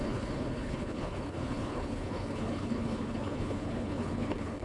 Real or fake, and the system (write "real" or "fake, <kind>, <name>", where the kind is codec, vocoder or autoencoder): fake, codec, HILCodec